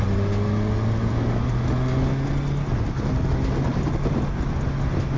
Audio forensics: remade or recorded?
recorded